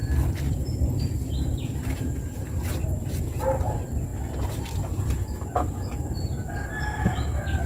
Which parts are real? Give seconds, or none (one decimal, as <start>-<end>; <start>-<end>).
0.0-7.7